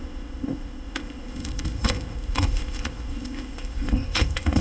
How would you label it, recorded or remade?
remade